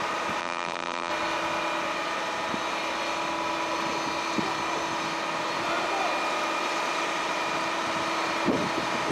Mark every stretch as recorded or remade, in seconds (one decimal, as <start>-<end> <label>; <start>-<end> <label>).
0.0-0.4 recorded; 0.4-1.1 remade; 1.1-9.1 recorded

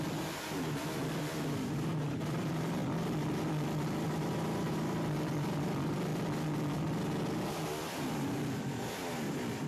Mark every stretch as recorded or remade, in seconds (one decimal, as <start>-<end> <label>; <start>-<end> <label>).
0.0-6.1 remade; 6.1-7.9 recorded; 7.9-9.7 remade

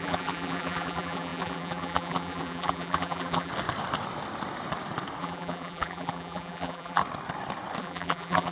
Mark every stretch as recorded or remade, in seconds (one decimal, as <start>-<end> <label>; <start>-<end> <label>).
0.0-3.5 remade; 3.5-5.2 recorded; 5.2-7.0 remade; 7.0-7.8 recorded; 7.8-8.5 remade

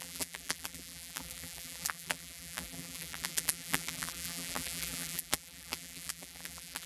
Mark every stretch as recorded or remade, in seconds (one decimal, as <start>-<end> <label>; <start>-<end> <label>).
0.0-6.9 remade